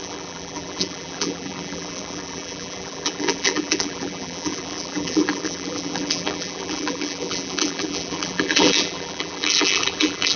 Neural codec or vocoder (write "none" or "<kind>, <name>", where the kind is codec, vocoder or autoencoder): vocoder, BigVGAN v2